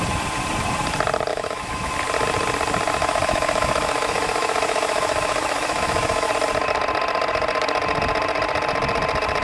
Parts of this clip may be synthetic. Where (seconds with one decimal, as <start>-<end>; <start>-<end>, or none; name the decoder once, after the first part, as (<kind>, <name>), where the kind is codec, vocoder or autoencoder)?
1.3-1.9 (autoencoder, DAC-VAE); 3.0-6.3